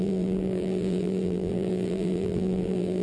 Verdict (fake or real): fake